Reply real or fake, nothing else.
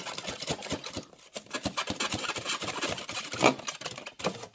real